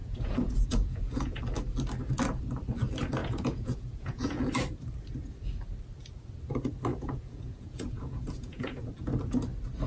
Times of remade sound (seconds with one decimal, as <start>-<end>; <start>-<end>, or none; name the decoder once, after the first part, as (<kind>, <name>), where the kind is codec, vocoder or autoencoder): 0.0-1.4 (vocoder, Vocos); 3.2-4.5; 6.9-8.9